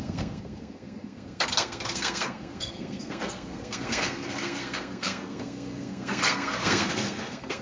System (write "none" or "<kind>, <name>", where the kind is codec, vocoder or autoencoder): codec, SNAC